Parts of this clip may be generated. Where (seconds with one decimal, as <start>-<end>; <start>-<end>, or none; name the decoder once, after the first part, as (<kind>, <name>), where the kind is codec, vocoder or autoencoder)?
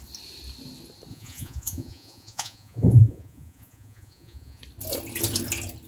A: 1.1-4.6 (vocoder, Vocos)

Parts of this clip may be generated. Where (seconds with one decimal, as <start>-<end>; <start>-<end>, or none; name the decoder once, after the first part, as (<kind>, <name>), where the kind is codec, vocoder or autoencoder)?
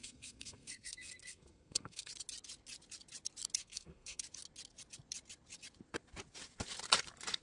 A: 0.0-2.1 (codec, SNAC); 3.6-4.2